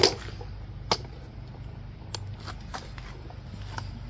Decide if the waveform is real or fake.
real